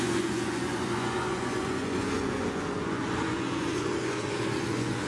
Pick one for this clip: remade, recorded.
remade